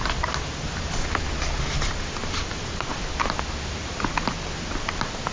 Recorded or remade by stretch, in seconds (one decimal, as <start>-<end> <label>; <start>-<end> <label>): 0.0-5.3 recorded